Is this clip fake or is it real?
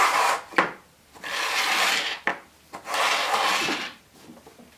fake